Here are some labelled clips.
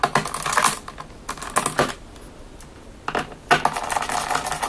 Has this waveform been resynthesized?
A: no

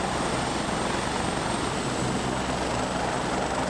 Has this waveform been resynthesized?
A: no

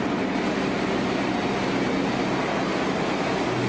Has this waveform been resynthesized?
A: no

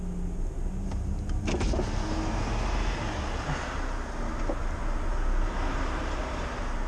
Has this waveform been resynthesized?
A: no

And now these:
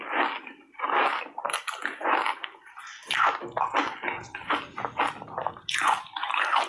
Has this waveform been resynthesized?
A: no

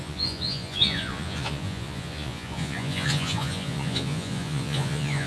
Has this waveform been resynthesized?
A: yes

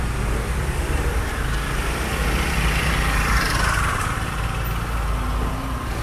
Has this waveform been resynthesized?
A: no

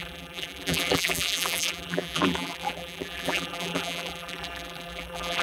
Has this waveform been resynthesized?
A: yes